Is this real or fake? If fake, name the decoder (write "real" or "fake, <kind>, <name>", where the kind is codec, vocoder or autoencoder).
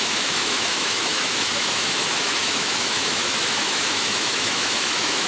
fake, autoencoder, DAC-VAE